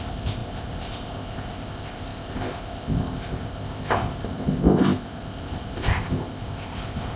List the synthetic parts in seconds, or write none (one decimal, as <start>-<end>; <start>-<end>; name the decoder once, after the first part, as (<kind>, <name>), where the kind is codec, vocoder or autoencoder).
0.0-7.2 (codec, ZipCodec)